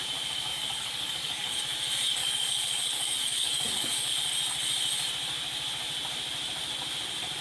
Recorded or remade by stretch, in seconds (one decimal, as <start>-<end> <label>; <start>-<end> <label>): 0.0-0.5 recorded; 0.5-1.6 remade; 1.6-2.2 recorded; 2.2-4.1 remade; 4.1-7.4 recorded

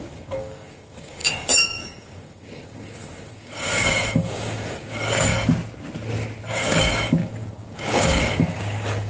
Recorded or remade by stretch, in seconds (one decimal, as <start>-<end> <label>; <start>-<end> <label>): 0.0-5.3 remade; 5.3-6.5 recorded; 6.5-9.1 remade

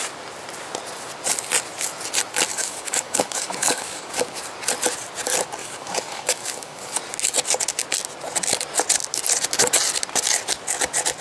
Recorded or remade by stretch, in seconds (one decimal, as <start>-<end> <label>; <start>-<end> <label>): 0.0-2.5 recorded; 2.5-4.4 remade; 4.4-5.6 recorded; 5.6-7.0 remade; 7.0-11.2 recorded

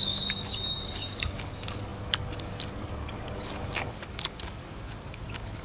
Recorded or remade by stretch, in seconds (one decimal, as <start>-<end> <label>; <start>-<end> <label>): 0.0-5.6 remade

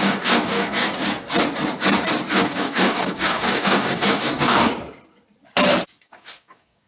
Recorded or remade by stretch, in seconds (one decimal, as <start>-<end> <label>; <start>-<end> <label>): 0.0-0.9 remade; 0.9-2.3 recorded; 2.3-4.7 remade; 4.7-6.0 recorded; 6.0-6.9 remade

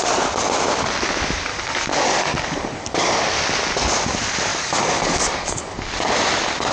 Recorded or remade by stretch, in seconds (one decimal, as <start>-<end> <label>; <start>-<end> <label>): 0.0-1.5 recorded; 1.5-3.1 remade; 3.1-4.5 recorded; 4.5-5.9 remade; 5.9-6.7 recorded

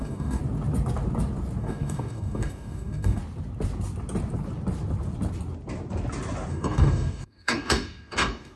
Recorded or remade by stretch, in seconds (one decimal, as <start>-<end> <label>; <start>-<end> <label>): 0.0-0.4 remade; 0.4-1.6 recorded; 1.6-3.2 remade; 3.2-6.5 recorded; 6.5-8.6 remade

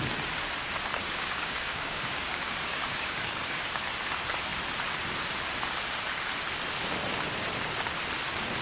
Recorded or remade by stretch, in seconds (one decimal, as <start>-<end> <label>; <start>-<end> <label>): 0.0-1.0 recorded; 1.0-3.8 remade; 3.8-8.6 recorded